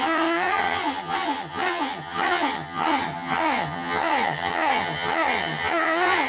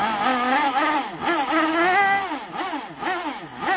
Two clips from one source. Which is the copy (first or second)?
first